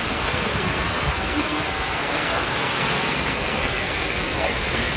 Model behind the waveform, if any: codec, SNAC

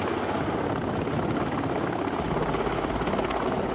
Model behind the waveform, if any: none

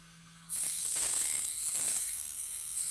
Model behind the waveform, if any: codec, SNAC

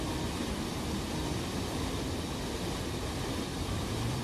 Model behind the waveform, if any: vocoder, BigVGAN v2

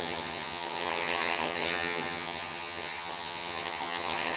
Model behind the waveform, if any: vocoder, HiFi-GAN